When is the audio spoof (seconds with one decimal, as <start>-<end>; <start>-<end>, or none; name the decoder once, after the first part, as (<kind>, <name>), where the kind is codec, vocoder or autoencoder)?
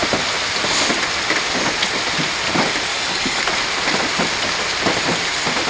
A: 2.9-3.4 (codec, DAC)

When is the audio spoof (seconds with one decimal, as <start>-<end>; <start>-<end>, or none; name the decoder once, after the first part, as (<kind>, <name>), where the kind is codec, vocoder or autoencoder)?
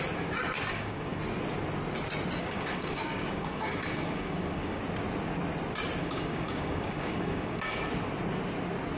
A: 0.7-1.2 (codec, DAC); 2.4-4.8; 6.0-7.9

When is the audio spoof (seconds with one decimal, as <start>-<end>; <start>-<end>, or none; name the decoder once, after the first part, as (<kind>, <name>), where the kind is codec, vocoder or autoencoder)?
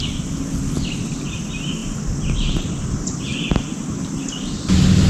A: none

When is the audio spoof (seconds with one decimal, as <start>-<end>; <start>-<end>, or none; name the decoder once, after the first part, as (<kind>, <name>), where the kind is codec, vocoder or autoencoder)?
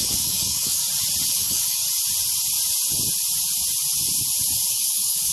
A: 0.0-0.8 (codec, DAC); 1.3-1.8; 4.7-5.3